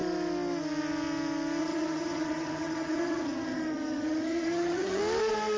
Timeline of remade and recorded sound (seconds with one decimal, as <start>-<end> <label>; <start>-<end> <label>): 0.0-1.6 recorded; 1.6-5.0 remade; 5.0-5.6 recorded